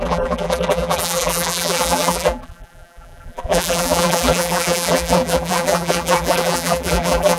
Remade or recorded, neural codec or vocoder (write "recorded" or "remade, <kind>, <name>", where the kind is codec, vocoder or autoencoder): remade, vocoder, BigVGAN v2